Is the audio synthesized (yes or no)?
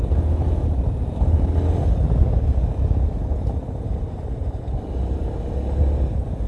no